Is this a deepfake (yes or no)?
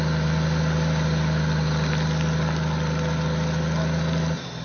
no